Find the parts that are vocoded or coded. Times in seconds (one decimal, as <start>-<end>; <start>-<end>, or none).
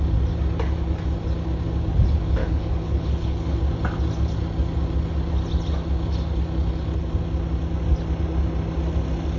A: 2.4-3.6